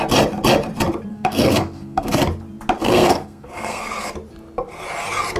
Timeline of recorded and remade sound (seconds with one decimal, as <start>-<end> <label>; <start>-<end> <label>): 0.0-1.1 recorded; 1.1-2.2 remade; 2.2-2.8 recorded; 2.8-3.9 remade; 3.9-5.4 recorded